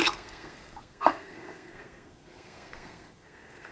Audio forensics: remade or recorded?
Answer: remade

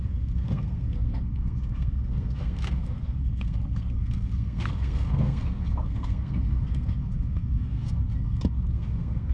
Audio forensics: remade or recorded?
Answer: remade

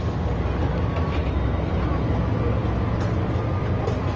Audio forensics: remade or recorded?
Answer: recorded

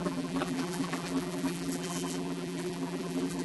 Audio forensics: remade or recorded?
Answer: remade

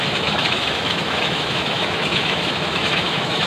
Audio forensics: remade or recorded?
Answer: remade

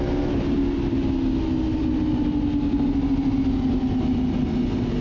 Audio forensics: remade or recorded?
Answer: recorded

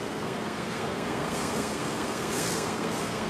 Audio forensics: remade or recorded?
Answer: remade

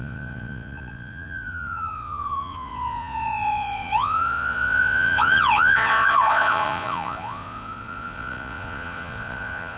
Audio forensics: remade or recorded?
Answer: remade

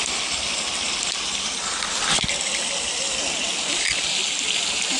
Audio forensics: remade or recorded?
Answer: recorded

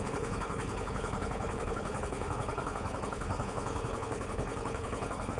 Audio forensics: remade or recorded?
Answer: remade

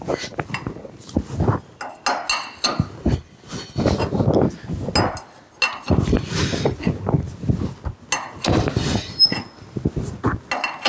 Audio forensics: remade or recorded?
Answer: recorded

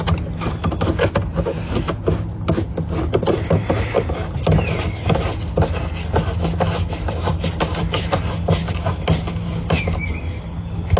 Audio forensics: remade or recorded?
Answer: recorded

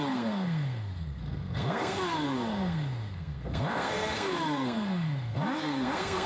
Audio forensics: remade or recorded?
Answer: remade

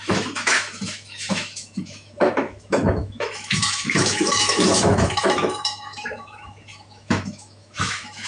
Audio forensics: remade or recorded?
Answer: remade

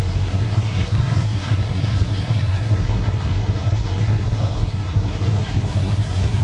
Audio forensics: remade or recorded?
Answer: remade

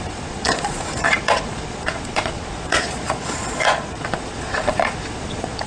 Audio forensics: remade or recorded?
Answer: remade